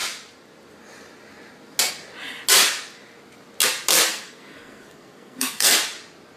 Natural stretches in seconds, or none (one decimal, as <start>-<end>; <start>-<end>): 0.0-4.1; 5.8-6.4